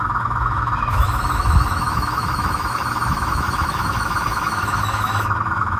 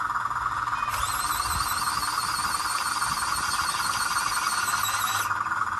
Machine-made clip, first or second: first